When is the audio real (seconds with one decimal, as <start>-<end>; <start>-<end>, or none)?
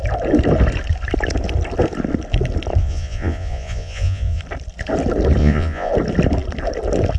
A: 0.0-2.8; 4.4-5.4; 5.9-7.2